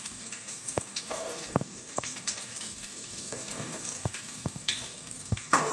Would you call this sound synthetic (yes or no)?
yes